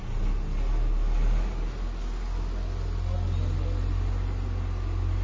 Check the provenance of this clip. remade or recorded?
recorded